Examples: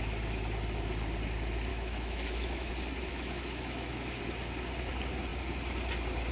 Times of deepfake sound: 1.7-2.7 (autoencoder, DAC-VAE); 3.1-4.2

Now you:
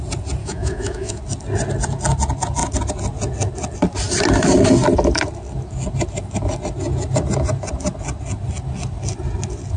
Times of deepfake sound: 0.4-1.2 (autoencoder, DAC-VAE)

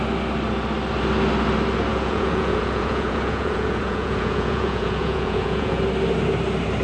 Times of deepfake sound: 1.9-5.8 (vocoder, Vocos)

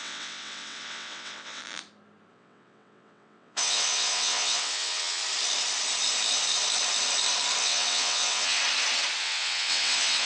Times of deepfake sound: 0.0-1.6 (vocoder, WaveNeXt); 2.3-5.2; 7.6-8.6; 9.2-10.3

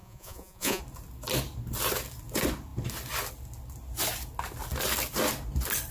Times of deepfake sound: 0.0-0.8 (vocoder, Vocos)

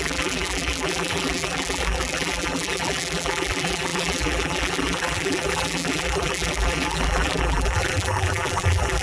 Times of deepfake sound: 0.0-9.0 (vocoder, BigVGAN v2)

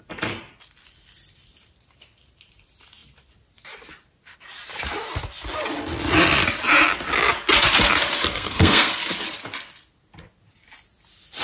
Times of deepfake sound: 8.3-9.0 (codec, SNAC)